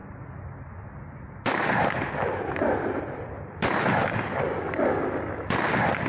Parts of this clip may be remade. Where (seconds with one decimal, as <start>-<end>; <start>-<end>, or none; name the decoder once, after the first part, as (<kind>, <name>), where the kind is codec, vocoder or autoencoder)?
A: 4.0-5.5 (codec, DAC)